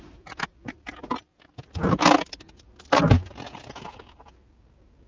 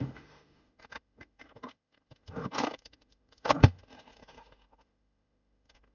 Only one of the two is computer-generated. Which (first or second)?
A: second